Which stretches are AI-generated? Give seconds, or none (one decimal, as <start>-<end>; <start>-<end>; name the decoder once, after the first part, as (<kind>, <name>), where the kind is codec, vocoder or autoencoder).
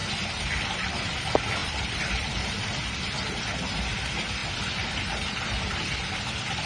0.0-0.9 (vocoder, BigVGAN v2); 1.6-2.4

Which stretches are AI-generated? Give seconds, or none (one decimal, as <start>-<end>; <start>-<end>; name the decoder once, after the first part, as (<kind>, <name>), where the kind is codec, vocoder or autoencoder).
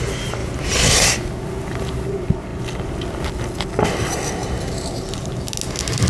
0.4-0.9 (vocoder, BigVGAN v2); 4.4-5.5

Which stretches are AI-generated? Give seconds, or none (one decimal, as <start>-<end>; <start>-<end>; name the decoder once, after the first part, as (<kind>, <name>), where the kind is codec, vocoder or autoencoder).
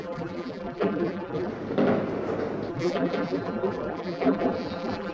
0.0-1.5 (vocoder, BigVGAN v2); 2.7-5.1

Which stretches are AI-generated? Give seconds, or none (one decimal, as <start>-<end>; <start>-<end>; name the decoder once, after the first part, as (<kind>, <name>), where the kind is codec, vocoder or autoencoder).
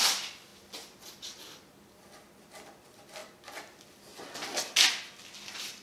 0.0-0.5 (vocoder, BigVGAN v2); 2.8-3.2; 5.0-5.8